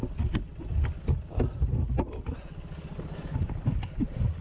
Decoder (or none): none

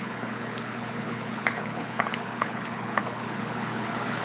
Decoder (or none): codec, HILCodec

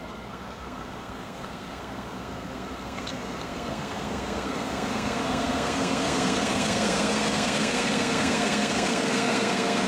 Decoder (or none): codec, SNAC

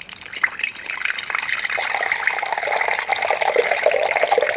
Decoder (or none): none